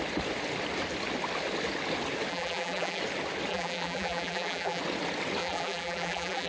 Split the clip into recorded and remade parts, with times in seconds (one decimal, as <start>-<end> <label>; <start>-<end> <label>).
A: 0.0-2.3 recorded; 2.3-3.0 remade; 3.0-3.5 recorded; 3.5-4.8 remade; 4.8-5.4 recorded; 5.4-6.5 remade